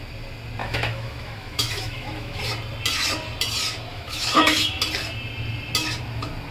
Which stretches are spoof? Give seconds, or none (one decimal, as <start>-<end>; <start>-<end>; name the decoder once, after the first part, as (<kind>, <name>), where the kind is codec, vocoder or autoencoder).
0.6-2.4 (autoencoder, DAC-VAE); 3.9-4.8